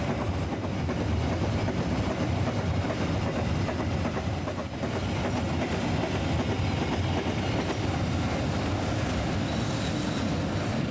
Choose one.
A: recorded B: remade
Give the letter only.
A